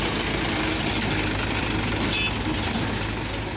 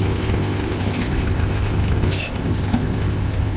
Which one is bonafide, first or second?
first